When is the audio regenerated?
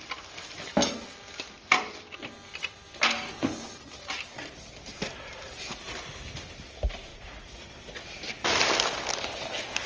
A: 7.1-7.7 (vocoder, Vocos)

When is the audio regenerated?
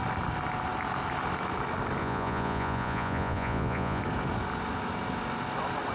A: 2.0-4.0 (vocoder, Vocos)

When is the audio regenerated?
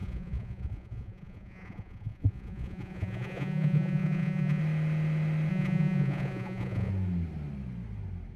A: 0.0-4.6 (vocoder, Vocos); 5.5-6.9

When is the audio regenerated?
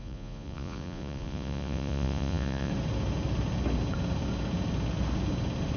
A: 0.0-2.7 (vocoder, Vocos)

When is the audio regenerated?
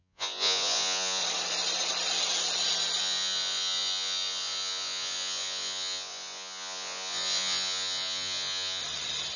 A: 0.0-1.2 (vocoder, Vocos); 3.0-8.8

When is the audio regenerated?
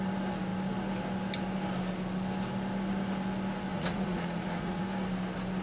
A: 3.7-4.8 (vocoder, Vocos)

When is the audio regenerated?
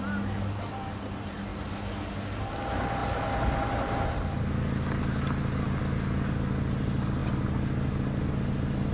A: none